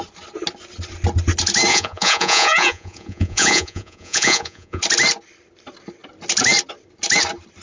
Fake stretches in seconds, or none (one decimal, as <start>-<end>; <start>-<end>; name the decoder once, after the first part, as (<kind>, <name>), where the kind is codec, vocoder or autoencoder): 1.7-4.8 (vocoder, Vocos)